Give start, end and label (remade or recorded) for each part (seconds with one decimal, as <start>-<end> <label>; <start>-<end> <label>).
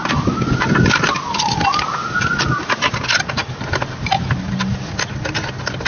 0.0-5.9 recorded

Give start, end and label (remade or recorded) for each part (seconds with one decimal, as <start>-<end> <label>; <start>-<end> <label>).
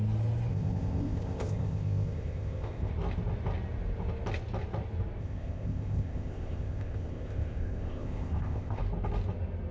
0.0-0.5 recorded; 0.5-2.9 remade; 2.9-5.2 recorded; 5.2-8.8 remade; 8.8-9.7 recorded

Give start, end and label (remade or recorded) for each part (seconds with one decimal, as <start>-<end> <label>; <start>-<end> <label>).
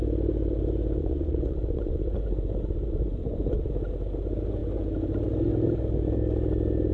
0.0-1.0 recorded; 1.0-3.7 remade; 3.7-6.9 recorded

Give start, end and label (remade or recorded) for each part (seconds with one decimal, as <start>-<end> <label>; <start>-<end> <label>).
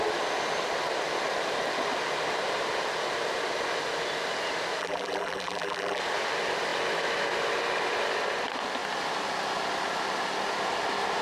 0.0-4.8 recorded; 4.8-6.0 remade; 6.0-11.2 recorded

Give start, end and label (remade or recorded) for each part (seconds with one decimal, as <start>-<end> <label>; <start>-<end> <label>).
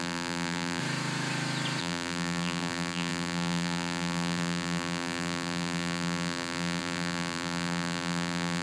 0.0-0.8 remade; 0.8-1.8 recorded; 1.8-8.6 remade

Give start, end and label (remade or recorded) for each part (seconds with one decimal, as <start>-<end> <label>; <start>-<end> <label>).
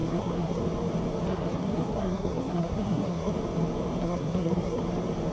0.0-0.6 remade; 0.6-1.3 recorded; 1.3-3.3 remade; 3.3-4.0 recorded; 4.0-4.8 remade; 4.8-5.3 recorded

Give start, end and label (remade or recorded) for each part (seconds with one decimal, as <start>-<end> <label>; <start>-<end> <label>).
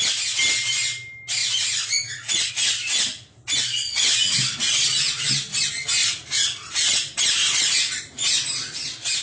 0.0-1.4 recorded; 1.4-2.5 remade; 2.5-6.0 recorded; 6.0-6.9 remade; 6.9-9.2 recorded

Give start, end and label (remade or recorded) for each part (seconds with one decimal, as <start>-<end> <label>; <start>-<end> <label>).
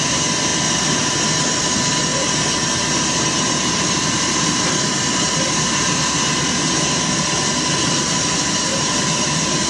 0.0-2.1 recorded; 2.1-3.0 remade; 3.0-8.7 recorded; 8.7-9.7 remade